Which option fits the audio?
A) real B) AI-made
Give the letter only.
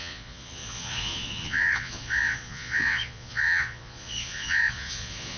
B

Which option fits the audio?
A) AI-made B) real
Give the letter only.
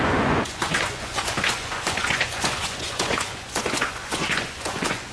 A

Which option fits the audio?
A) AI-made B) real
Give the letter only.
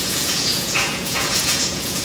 A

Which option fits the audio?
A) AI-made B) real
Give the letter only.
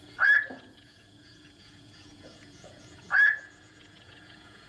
A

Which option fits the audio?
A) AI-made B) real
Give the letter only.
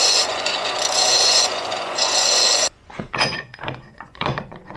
A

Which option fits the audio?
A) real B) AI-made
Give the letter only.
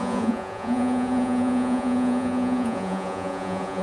B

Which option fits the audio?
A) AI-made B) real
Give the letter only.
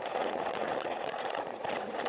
A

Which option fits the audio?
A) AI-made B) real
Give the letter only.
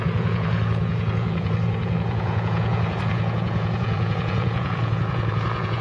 A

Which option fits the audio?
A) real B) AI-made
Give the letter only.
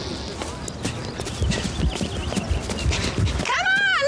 A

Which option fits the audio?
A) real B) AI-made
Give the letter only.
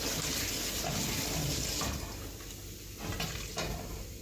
A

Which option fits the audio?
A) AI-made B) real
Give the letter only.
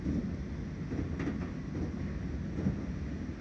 B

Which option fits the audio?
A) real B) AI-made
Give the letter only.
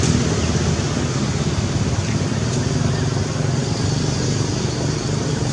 A